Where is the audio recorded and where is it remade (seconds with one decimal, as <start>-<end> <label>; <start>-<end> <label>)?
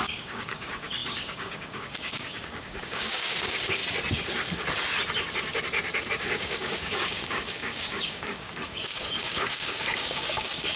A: 0.0-3.8 remade; 3.8-6.1 recorded; 6.1-10.8 remade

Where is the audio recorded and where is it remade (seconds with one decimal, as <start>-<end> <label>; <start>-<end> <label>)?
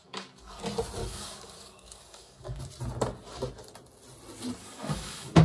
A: 0.0-0.6 remade; 0.6-1.0 recorded; 1.0-2.6 remade; 2.6-4.6 recorded; 4.6-5.4 remade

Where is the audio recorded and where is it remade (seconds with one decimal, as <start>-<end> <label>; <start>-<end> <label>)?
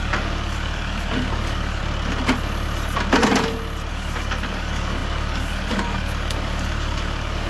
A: 0.0-1.8 remade; 1.8-3.9 recorded; 3.9-7.5 remade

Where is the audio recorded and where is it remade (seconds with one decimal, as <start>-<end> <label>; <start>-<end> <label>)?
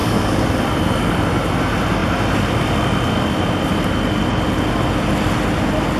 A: 0.0-0.5 remade; 0.5-6.0 recorded